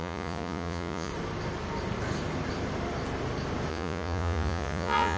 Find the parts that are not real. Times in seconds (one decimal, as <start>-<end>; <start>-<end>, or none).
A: 0.0-1.1; 3.7-5.2